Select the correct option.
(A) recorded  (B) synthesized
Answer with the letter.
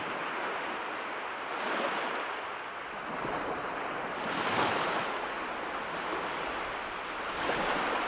A